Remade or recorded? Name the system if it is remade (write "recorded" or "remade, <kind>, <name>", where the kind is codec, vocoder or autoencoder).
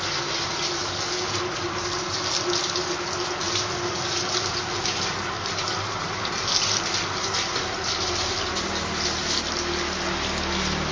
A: recorded